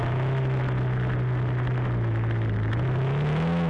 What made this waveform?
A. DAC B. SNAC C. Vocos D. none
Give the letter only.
D